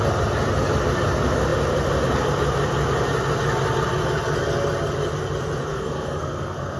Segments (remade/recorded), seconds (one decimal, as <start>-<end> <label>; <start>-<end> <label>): 0.0-5.7 recorded; 5.7-6.8 remade